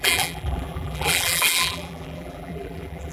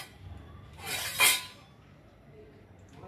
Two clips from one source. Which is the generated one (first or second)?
first